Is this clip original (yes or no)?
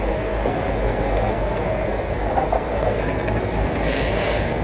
no